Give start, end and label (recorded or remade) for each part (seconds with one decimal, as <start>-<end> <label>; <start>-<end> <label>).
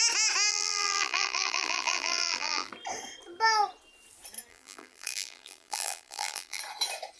0.0-0.5 recorded; 0.5-2.7 remade; 2.7-4.5 recorded; 4.5-6.6 remade; 6.6-7.2 recorded